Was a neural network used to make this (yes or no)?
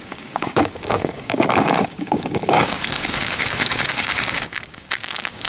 yes